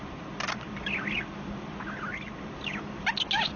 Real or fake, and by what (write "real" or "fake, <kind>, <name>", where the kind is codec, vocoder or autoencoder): real